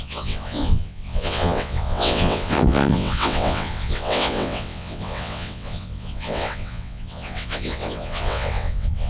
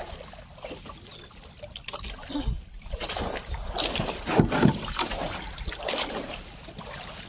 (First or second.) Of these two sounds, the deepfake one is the first